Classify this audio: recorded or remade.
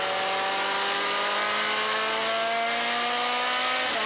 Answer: recorded